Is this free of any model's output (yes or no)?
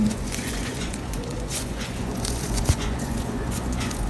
no